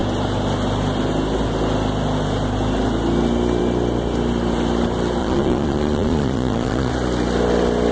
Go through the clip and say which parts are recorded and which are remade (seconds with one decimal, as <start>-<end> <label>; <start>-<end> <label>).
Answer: 0.0-5.2 recorded; 5.2-6.9 remade; 6.9-7.9 recorded